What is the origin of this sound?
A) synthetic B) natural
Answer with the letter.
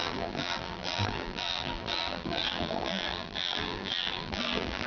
A